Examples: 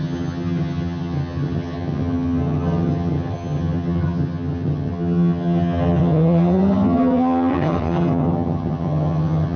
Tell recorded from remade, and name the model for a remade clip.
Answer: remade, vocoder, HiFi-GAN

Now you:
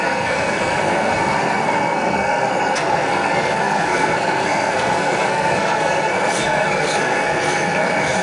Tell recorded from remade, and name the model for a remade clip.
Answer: remade, codec, SNAC